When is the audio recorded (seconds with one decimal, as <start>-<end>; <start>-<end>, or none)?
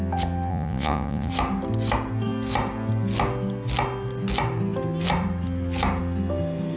0.0-0.5; 1.3-6.8